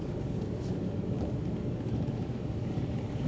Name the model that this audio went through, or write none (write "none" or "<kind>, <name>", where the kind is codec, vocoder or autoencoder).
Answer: codec, DAC